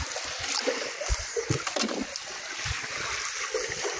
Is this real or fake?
real